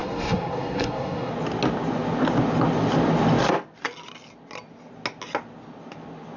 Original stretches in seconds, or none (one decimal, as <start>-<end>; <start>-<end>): 1.3-6.4